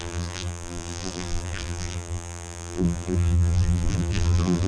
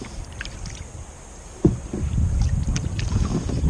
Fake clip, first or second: first